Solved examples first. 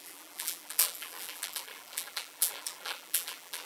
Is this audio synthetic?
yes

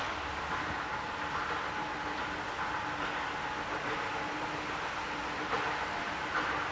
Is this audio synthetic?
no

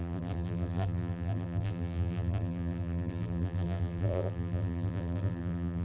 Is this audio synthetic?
yes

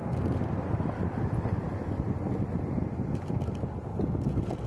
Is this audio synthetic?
no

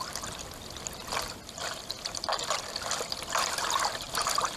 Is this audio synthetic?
no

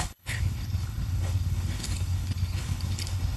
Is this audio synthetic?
yes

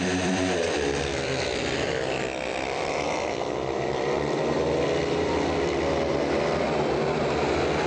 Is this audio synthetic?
yes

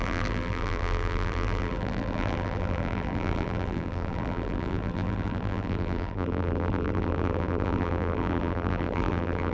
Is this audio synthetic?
yes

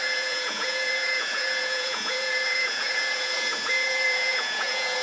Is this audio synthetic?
yes